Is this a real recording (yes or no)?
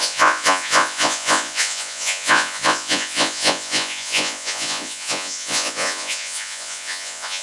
no